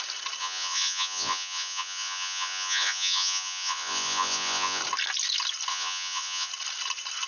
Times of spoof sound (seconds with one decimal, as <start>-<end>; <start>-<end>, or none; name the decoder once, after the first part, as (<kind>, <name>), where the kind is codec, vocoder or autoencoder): 0.4-4.8 (vocoder, Vocos); 5.7-6.5